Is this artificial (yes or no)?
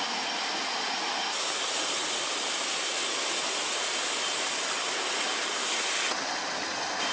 no